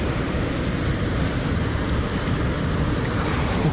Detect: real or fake fake